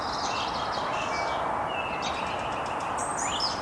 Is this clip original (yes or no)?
yes